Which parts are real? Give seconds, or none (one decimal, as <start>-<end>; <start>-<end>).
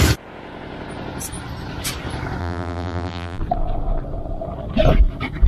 0.0-2.4; 3.4-5.5